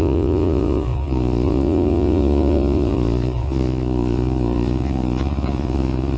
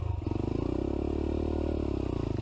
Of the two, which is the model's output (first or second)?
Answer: first